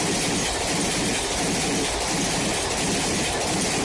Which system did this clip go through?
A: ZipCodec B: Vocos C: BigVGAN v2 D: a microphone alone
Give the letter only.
D